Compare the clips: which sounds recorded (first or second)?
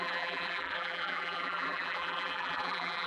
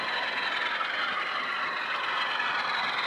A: second